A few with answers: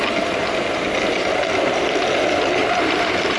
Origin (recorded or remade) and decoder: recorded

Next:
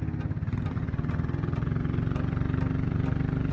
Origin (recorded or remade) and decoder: recorded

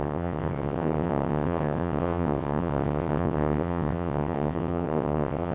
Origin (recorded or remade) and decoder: remade, vocoder, WaveNeXt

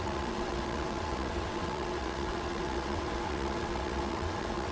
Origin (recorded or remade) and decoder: remade, vocoder, WaveNeXt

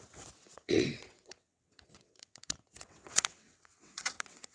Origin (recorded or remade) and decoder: remade, vocoder, WaveNeXt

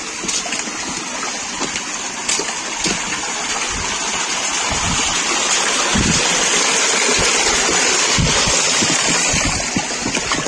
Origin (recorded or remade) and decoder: recorded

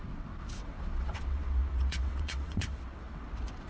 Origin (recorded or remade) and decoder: remade, vocoder, WaveNeXt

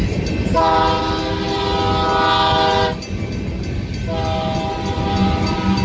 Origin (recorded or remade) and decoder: recorded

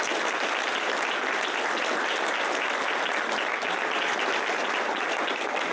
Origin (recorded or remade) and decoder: recorded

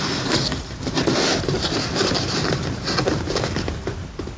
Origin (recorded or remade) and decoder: recorded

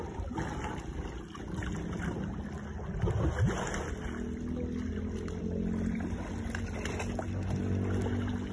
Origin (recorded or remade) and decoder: recorded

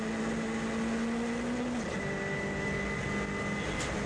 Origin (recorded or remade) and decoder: recorded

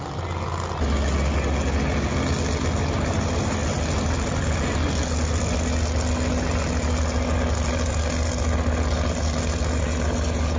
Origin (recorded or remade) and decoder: recorded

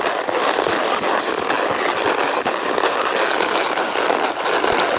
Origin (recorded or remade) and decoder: recorded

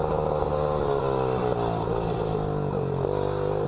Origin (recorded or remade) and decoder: recorded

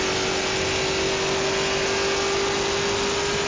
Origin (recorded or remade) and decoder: recorded